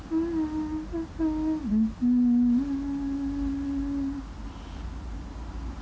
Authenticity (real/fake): real